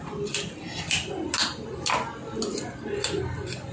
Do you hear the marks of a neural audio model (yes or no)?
no